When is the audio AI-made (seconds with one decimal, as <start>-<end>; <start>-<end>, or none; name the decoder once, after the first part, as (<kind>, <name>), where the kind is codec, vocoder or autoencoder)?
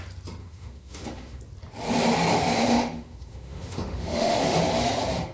0.4-1.4 (autoencoder, DAC-VAE); 2.6-4.6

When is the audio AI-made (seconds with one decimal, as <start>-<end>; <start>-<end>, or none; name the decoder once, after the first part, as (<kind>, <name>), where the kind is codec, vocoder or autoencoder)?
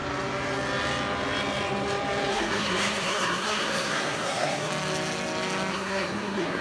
2.3-4.7 (codec, SNAC); 5.7-6.6